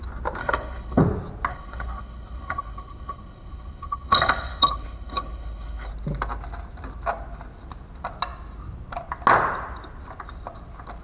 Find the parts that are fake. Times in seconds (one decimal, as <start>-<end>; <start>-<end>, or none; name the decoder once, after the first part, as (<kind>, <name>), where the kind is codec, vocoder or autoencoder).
0.4-1.0 (codec, HILCodec); 1.5-5.9

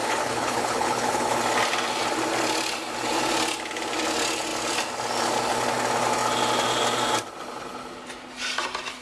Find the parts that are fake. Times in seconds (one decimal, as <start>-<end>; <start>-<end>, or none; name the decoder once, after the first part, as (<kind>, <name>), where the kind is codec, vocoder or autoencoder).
0.0-1.4 (codec, HILCodec)

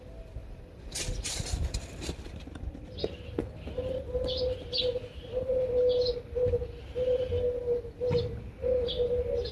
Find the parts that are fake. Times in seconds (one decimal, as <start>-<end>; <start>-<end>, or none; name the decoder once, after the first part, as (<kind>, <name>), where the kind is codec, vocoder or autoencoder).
none